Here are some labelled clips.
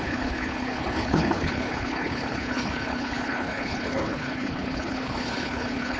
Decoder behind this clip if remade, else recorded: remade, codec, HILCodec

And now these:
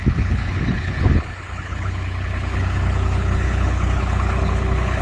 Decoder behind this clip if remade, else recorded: remade, codec, HILCodec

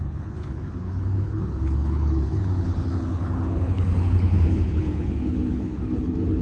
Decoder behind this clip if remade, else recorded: remade, codec, HILCodec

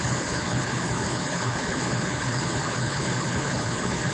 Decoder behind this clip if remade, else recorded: remade, codec, HILCodec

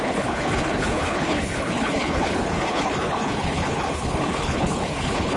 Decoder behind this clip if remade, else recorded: remade, codec, HILCodec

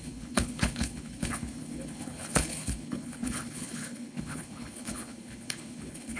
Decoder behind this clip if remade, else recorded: remade, codec, HILCodec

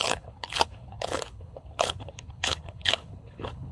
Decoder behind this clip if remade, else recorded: remade, codec, HILCodec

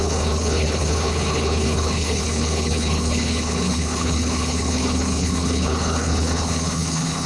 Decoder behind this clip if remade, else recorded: remade, codec, HILCodec